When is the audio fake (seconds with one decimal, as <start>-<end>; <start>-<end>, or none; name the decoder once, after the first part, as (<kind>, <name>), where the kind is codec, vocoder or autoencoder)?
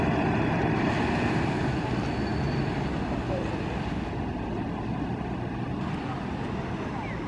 none